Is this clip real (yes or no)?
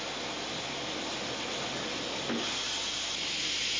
yes